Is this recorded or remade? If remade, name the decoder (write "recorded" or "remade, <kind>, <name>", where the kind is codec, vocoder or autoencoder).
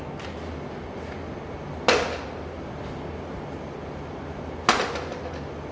recorded